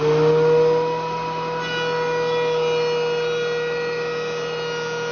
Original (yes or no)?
yes